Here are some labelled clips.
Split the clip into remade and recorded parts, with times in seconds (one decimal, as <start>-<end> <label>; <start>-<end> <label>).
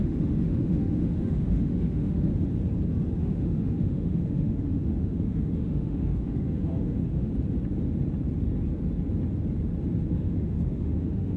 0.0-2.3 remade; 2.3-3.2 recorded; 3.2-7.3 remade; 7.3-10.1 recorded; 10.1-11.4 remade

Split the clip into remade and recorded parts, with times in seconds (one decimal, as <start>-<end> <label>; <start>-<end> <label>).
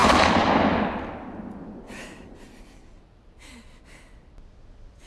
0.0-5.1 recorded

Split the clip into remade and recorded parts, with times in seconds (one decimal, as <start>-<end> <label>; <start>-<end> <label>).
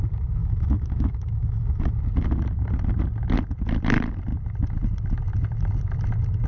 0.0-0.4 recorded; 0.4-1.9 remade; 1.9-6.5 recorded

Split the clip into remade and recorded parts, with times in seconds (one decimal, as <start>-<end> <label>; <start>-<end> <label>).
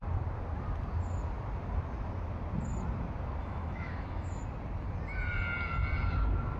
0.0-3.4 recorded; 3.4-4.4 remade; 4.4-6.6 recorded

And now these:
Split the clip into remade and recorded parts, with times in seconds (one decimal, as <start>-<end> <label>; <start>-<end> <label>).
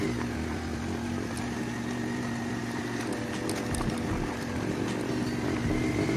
0.0-6.2 recorded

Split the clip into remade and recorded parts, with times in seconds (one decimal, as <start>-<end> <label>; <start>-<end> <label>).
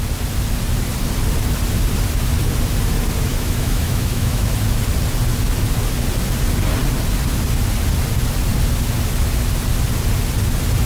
0.0-3.3 recorded; 3.3-4.5 remade; 4.5-10.9 recorded